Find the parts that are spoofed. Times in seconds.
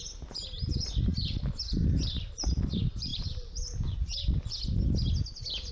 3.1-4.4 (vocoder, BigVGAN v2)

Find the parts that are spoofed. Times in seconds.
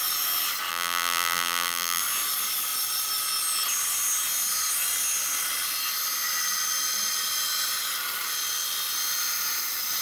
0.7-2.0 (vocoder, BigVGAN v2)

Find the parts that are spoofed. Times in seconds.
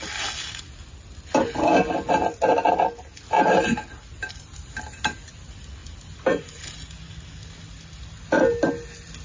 none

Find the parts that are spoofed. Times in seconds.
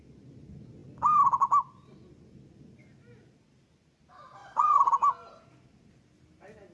4.4-4.9 (vocoder, Vocos)